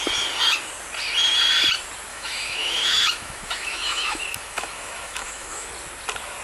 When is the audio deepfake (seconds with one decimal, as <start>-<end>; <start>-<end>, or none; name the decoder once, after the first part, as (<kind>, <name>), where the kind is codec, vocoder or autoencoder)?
2.1-5.7 (autoencoder, DAC-VAE)